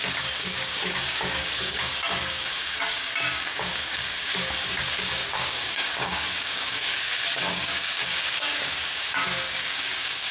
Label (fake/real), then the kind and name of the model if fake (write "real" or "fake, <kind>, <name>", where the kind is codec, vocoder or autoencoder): fake, codec, DAC